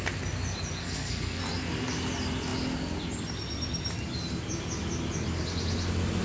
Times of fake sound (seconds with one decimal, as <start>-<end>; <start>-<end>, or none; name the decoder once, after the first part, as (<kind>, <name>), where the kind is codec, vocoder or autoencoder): 0.8-1.4 (codec, SNAC)